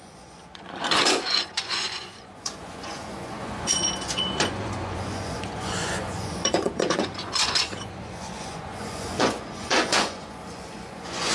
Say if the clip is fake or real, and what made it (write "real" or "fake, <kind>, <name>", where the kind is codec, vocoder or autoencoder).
fake, vocoder, Vocos